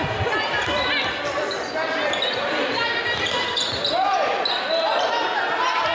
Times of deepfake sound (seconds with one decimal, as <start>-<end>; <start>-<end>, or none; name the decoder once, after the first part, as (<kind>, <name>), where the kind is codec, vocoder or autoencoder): none